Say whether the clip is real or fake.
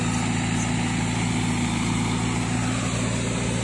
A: real